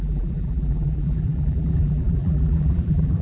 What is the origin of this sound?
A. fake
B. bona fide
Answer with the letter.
A